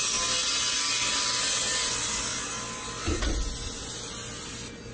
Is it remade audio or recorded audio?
recorded